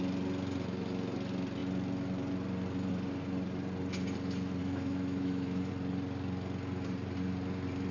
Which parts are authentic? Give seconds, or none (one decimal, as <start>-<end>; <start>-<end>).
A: 0.0-4.6; 5.7-7.9